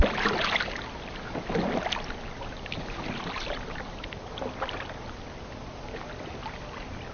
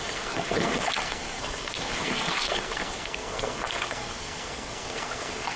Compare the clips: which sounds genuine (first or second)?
first